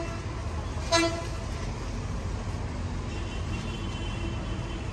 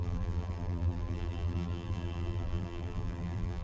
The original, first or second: first